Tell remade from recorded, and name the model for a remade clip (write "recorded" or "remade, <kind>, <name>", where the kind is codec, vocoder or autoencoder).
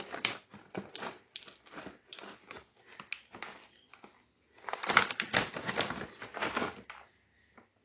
recorded